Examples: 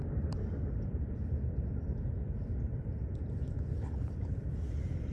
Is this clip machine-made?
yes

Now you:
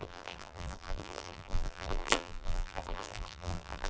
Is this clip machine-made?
yes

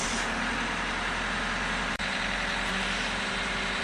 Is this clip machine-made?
yes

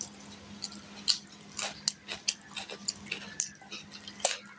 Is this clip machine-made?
no